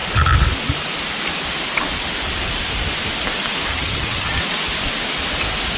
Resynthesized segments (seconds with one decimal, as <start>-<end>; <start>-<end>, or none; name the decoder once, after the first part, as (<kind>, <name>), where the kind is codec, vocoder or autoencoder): 3.7-4.4 (vocoder, HiFi-GAN)